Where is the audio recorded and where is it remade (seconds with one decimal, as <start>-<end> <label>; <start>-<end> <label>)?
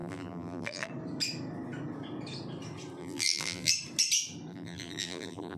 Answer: 0.0-0.9 remade; 0.9-3.0 recorded; 3.0-3.7 remade; 3.7-4.5 recorded; 4.5-5.6 remade